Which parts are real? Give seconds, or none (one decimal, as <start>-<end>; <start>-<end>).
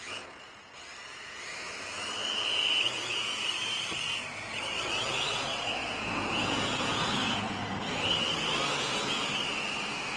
0.9-5.9; 7.6-8.7; 9.3-10.2